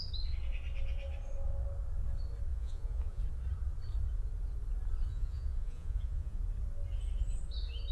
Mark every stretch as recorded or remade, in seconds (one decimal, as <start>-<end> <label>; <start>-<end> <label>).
0.0-2.5 recorded; 2.5-3.2 remade; 3.2-5.1 recorded; 5.1-6.4 remade; 6.4-7.9 recorded